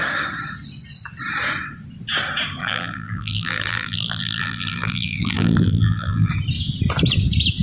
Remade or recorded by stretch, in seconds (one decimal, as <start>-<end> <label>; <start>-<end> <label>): 0.0-2.6 recorded; 2.6-6.3 remade; 6.3-7.6 recorded